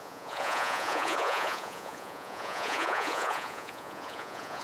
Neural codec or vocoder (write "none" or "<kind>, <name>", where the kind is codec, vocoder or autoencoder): vocoder, Vocos